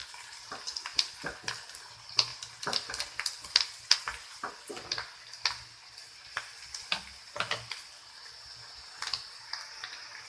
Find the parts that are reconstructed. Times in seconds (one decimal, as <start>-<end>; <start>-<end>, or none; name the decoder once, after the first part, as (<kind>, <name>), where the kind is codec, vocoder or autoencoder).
none